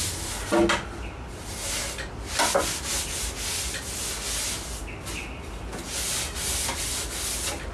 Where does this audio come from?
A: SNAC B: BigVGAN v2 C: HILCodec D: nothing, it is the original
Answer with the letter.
D